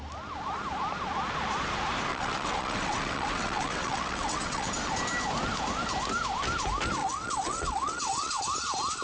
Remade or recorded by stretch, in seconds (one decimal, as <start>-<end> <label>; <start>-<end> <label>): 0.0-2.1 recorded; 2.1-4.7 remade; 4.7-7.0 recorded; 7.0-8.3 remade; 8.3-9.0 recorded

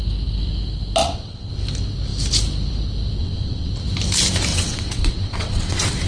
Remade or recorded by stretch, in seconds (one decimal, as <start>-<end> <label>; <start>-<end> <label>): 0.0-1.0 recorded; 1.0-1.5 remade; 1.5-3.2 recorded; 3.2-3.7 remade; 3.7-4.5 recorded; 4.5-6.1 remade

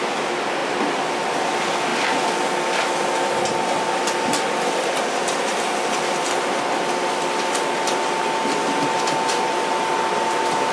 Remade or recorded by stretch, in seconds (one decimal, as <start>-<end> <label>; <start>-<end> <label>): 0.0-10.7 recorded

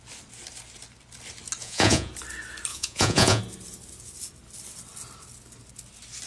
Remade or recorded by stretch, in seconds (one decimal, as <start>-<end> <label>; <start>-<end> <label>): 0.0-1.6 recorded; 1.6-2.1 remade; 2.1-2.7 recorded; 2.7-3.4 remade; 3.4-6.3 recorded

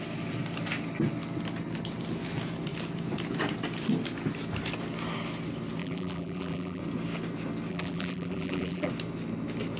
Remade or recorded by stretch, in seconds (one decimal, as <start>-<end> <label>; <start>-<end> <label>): 0.0-5.8 recorded; 5.8-6.8 remade; 6.8-7.7 recorded; 7.7-8.9 remade; 8.9-9.8 recorded